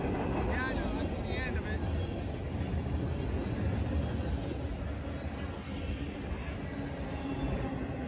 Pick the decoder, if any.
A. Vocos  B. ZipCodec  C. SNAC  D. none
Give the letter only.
D